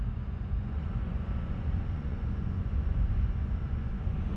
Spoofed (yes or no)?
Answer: yes